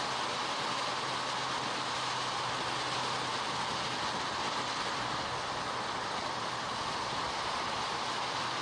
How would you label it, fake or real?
real